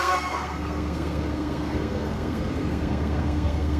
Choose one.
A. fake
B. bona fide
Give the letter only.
A